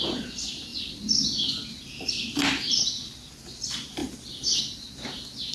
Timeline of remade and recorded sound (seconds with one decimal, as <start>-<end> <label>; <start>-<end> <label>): 0.0-5.5 recorded